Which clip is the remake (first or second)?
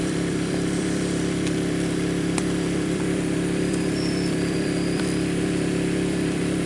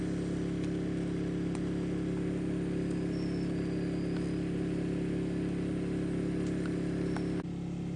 first